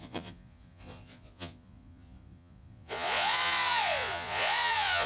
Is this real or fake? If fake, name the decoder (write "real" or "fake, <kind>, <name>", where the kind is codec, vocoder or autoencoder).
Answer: fake, vocoder, Vocos